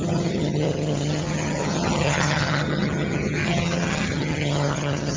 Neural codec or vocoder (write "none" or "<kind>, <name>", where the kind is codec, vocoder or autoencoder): vocoder, HiFi-GAN